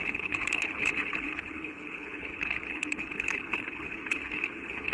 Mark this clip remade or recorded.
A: remade